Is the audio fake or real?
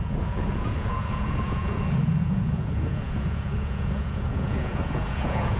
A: fake